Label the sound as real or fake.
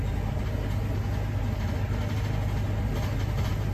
real